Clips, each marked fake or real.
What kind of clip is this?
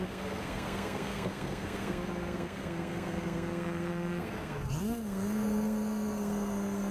fake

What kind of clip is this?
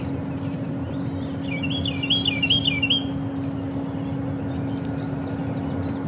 real